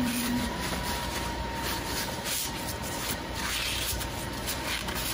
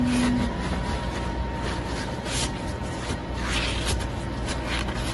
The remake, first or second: first